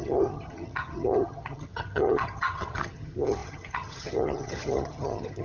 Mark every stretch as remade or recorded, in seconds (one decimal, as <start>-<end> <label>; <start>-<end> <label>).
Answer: 0.0-5.4 remade